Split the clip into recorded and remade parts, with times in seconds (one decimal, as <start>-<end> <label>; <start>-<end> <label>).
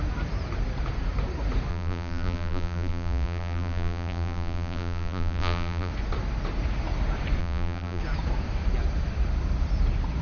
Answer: 0.0-1.7 recorded; 1.7-5.9 remade; 5.9-7.4 recorded; 7.4-8.0 remade; 8.0-10.2 recorded